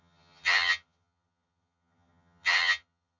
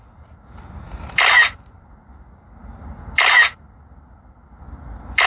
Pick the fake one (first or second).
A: first